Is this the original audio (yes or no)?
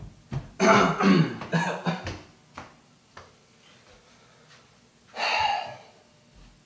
yes